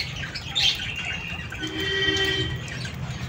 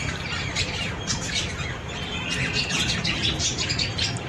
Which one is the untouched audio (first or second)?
first